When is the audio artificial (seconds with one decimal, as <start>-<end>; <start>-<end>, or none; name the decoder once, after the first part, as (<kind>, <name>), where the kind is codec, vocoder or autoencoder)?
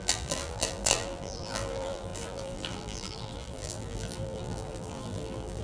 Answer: 0.0-5.6 (vocoder, BigVGAN v2)